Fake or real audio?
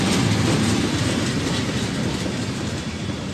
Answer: real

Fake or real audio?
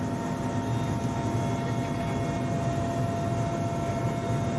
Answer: real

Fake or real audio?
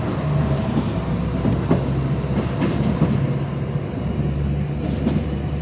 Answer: real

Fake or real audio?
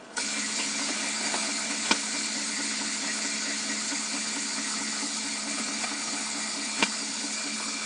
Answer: fake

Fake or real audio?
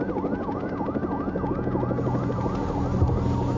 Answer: real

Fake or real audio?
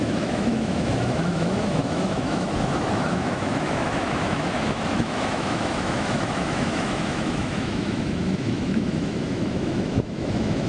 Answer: fake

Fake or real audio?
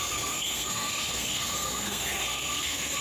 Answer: fake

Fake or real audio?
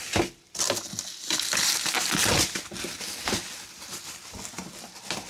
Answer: real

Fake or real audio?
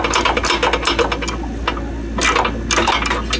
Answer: real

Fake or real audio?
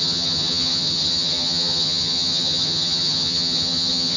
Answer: fake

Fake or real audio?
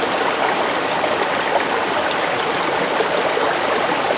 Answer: real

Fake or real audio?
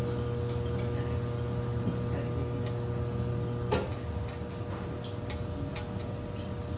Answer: real